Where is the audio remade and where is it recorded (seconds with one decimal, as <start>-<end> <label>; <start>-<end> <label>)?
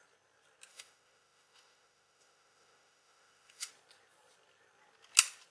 0.0-0.7 recorded; 0.7-3.7 remade; 3.7-5.5 recorded